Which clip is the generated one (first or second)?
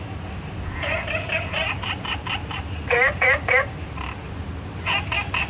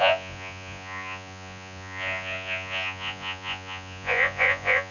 second